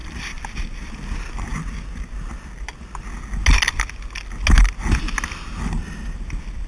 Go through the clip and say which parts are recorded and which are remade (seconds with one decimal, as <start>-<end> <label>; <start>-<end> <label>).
0.0-6.7 recorded